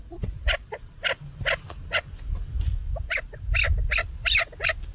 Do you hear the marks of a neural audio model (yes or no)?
no